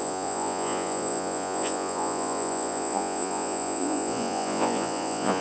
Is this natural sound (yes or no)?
no